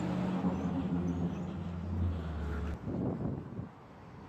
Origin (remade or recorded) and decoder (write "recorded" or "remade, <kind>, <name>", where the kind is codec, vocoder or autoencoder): recorded